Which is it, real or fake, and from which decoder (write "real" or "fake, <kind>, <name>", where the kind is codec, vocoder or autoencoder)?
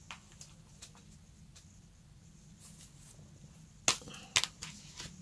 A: real